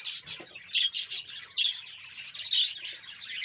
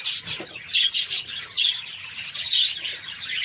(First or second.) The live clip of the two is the first